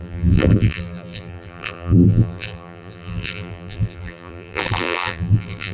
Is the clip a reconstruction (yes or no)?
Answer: yes